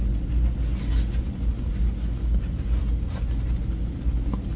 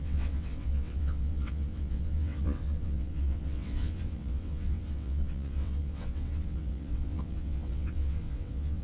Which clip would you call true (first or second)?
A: first